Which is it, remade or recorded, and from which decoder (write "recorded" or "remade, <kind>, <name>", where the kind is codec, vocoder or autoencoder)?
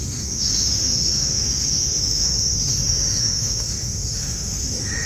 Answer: remade, autoencoder, DAC-VAE